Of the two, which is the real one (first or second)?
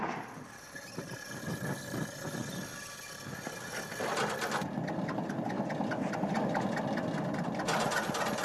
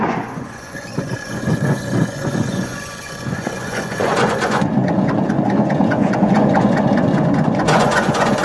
first